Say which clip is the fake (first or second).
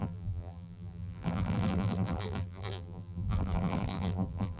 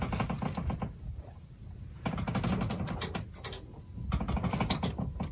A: first